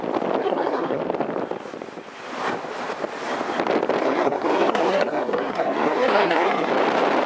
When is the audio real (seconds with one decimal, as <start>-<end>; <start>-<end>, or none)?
0.0-0.4; 1.0-4.0; 6.7-7.3